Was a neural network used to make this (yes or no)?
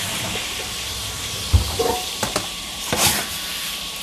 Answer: yes